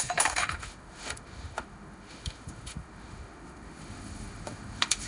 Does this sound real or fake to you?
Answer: fake